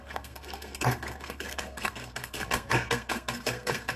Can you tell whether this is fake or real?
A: fake